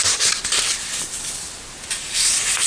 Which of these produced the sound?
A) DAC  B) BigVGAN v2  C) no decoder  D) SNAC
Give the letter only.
B